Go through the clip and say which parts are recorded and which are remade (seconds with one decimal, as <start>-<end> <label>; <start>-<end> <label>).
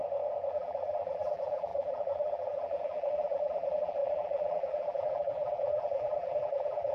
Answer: 0.0-0.5 recorded; 0.5-6.9 remade